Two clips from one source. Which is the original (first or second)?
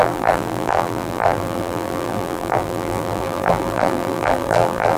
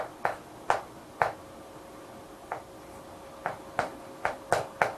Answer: second